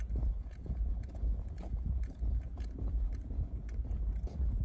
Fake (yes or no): yes